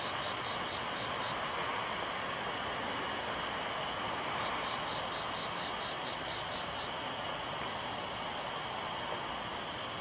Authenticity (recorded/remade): recorded